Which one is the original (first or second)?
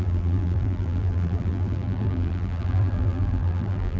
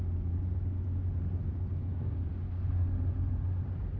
second